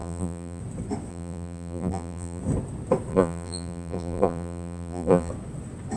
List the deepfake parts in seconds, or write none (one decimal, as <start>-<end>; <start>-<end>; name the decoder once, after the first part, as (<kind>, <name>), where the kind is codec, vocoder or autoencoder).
0.0-0.6 (vocoder, BigVGAN v2); 1.1-2.4; 3.1-5.3